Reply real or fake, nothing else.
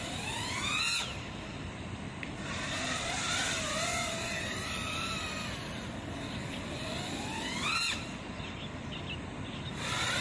real